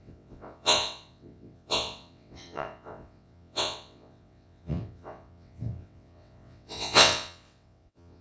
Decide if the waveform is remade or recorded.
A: remade